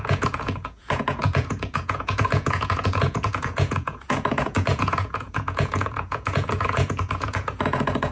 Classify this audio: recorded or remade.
remade